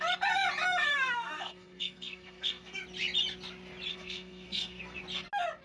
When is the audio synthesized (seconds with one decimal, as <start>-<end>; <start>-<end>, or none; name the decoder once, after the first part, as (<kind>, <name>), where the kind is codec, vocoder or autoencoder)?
0.9-2.8 (codec, SNAC); 3.9-5.0

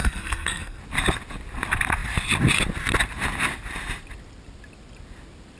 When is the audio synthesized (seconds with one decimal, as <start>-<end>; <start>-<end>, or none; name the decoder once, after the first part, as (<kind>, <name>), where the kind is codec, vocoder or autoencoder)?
0.0-0.8 (codec, SNAC)